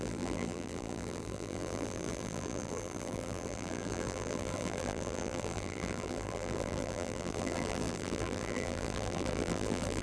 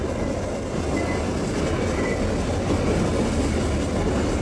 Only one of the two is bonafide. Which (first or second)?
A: second